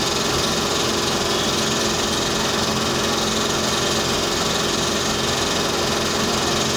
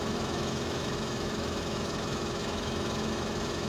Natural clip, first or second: first